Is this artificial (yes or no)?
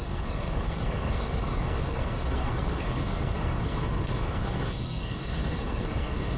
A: yes